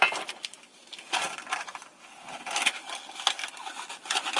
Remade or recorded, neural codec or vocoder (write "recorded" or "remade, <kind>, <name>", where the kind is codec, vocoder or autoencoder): recorded